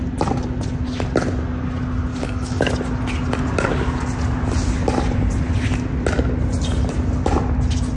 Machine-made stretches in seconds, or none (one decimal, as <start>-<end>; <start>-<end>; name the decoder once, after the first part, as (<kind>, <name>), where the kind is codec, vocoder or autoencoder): 2.1-2.7 (codec, DAC)